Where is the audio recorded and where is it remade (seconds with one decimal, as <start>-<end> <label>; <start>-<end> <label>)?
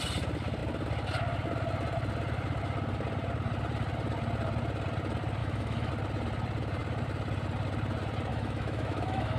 0.0-5.4 recorded; 5.4-5.9 remade; 5.9-8.3 recorded; 8.3-9.4 remade